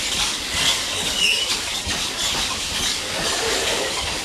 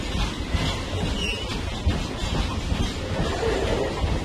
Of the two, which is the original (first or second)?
second